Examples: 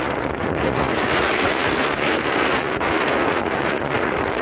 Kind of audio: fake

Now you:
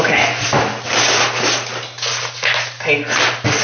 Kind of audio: real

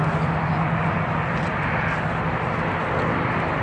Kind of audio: real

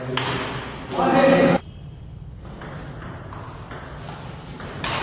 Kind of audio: real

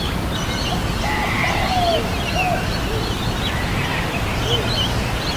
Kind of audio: real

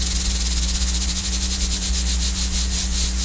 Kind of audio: fake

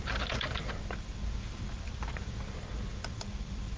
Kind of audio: real